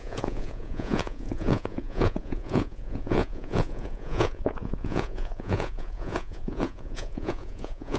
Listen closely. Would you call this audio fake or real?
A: fake